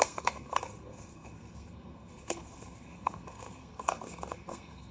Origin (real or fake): fake